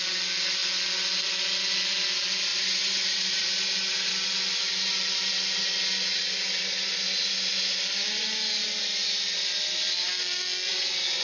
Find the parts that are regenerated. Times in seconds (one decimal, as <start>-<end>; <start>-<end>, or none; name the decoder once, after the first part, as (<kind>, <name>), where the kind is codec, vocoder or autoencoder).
2.5-4.1 (vocoder, BigVGAN v2)